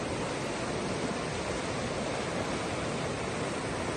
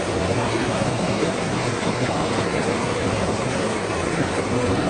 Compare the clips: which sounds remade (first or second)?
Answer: second